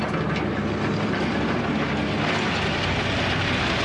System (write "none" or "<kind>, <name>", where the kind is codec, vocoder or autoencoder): none